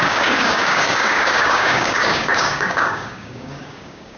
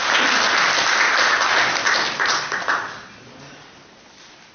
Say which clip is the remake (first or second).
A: first